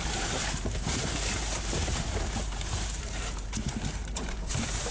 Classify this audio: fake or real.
fake